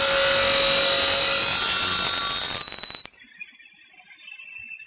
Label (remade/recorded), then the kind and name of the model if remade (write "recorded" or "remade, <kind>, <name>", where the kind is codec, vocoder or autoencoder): recorded